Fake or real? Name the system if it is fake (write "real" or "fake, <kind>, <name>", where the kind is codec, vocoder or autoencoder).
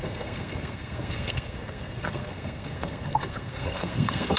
fake, codec, SNAC